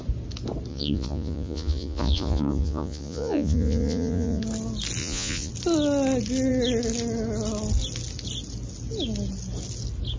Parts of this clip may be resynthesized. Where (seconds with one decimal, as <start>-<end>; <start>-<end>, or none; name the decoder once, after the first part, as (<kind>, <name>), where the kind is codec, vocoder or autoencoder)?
0.7-4.4 (vocoder, Vocos); 5.0-5.5